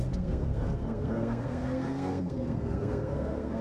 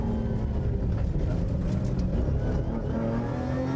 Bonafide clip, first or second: second